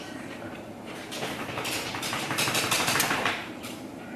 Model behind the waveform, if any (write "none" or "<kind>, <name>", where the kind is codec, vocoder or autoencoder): vocoder, BigVGAN v2